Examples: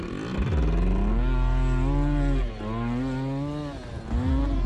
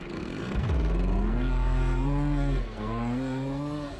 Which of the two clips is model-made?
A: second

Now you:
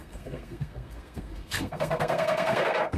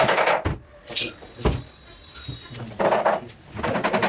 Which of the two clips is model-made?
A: first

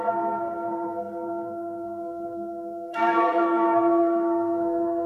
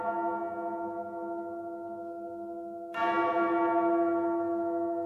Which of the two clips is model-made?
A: first